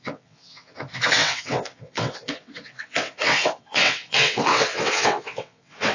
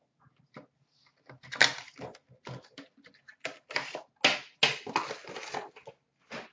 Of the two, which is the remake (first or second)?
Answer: first